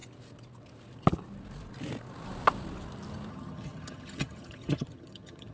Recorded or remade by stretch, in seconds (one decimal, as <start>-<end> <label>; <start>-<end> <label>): 0.0-3.3 recorded; 3.3-5.5 remade